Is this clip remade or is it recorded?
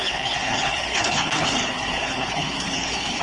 remade